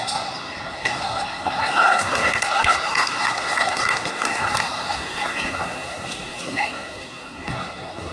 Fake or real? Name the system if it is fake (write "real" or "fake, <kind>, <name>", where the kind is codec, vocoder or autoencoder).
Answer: fake, codec, SNAC